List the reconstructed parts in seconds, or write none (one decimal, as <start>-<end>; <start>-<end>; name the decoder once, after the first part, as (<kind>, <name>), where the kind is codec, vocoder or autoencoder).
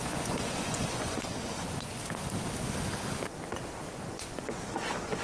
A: 0.0-2.0 (vocoder, Vocos); 4.1-5.2